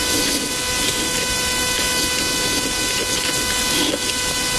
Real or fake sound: real